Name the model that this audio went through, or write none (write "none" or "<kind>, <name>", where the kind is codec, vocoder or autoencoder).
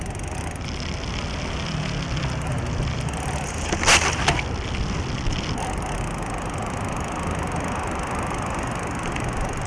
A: none